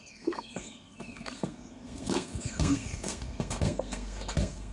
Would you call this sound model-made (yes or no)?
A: yes